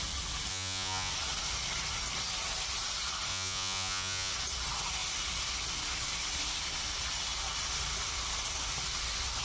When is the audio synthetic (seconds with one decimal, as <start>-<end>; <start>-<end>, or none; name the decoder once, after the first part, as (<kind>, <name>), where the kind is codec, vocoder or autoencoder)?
0.5-1.1 (vocoder, Vocos); 3.3-4.3